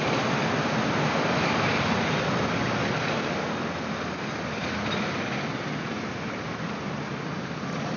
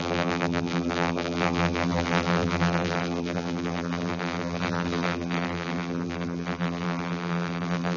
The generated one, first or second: second